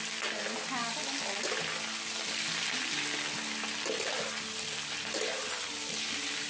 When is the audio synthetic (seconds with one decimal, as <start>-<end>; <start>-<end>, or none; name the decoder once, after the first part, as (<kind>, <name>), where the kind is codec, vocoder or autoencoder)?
none